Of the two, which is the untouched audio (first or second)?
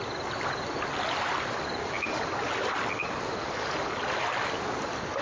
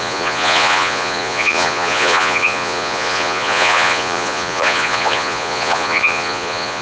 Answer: first